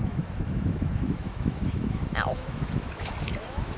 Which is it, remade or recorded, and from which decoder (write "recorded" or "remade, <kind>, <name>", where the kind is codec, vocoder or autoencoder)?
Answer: remade, autoencoder, DAC-VAE